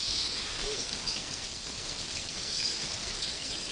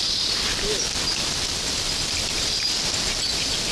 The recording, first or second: second